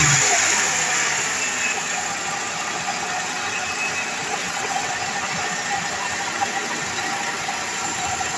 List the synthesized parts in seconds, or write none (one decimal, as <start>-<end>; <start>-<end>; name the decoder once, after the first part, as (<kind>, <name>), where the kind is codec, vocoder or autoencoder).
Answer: 4.4-4.9 (vocoder, WaveNeXt)